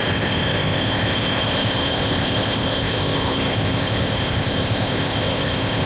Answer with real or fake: fake